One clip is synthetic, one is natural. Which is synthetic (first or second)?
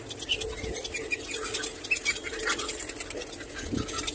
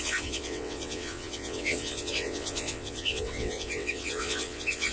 second